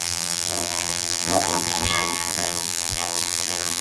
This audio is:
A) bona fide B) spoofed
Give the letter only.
B